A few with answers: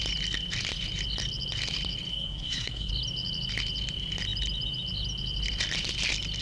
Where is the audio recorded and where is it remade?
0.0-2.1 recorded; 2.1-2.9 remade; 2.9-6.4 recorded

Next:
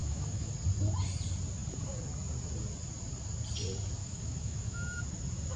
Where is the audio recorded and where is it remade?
0.0-0.5 remade; 0.5-4.0 recorded; 4.0-5.0 remade; 5.0-5.6 recorded

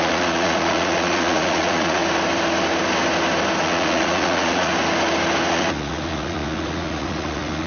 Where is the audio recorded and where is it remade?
0.0-2.0 remade; 2.0-3.6 recorded; 3.6-4.7 remade; 4.7-5.5 recorded; 5.5-7.7 remade

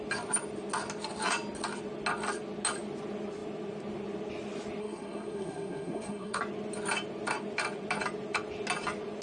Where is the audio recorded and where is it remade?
0.0-4.8 recorded; 4.8-6.4 remade; 6.4-9.2 recorded

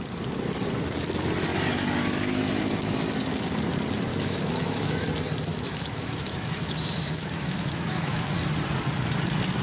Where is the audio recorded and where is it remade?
0.0-4.1 recorded; 4.1-5.1 remade; 5.1-5.5 recorded; 5.5-8.3 remade; 8.3-9.6 recorded

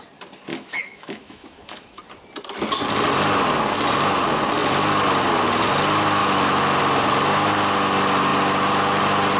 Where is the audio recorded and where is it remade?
0.0-0.5 recorded; 0.5-2.0 remade; 2.0-6.2 recorded; 6.2-6.8 remade; 6.8-9.4 recorded